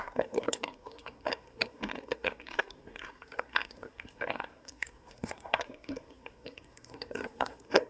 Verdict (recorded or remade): remade